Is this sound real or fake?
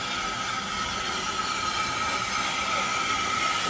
real